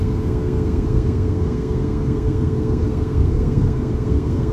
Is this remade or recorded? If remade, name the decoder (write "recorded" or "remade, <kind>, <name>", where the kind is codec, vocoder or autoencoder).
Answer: remade, codec, SNAC